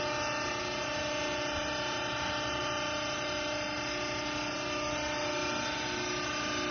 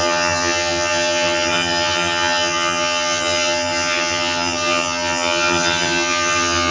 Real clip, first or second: first